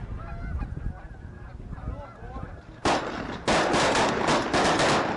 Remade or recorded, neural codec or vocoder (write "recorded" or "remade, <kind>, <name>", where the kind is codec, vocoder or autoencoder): recorded